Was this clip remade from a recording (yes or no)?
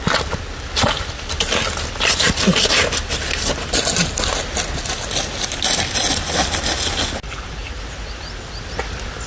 no